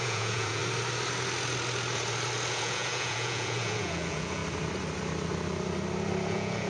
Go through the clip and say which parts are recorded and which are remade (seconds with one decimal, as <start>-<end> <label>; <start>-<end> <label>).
0.0-0.6 remade; 0.6-2.5 recorded; 2.5-4.4 remade; 4.4-6.3 recorded; 6.3-6.7 remade